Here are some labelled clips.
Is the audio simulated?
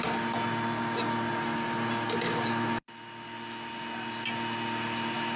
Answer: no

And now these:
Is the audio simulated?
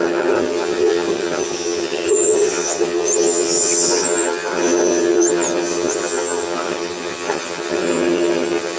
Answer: yes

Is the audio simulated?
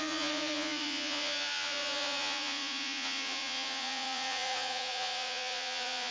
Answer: yes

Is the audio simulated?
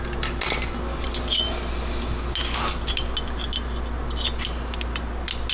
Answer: no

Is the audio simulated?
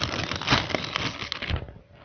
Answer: no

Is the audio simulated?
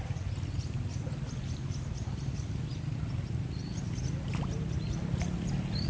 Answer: no